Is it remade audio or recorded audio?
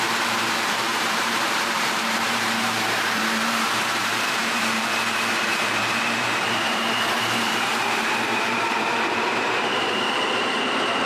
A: remade